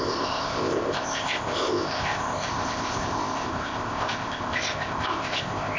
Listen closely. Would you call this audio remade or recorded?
remade